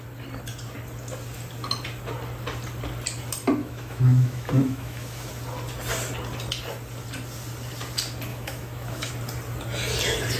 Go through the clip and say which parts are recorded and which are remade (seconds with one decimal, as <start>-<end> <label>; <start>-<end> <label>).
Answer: 0.0-3.6 recorded; 3.6-5.3 remade; 5.3-8.3 recorded; 8.3-9.1 remade; 9.1-10.4 recorded